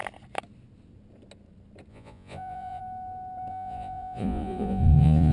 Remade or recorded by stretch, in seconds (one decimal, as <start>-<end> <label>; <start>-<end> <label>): 0.0-1.9 recorded; 1.9-2.8 remade; 2.8-3.5 recorded; 3.5-5.3 remade